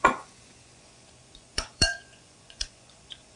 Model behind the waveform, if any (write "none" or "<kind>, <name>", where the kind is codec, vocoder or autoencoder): vocoder, Vocos